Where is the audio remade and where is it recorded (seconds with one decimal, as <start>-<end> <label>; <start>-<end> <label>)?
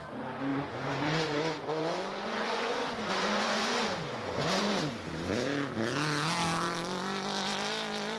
0.0-0.5 recorded; 0.5-4.9 remade; 4.9-8.2 recorded